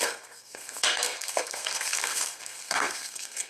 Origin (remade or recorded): remade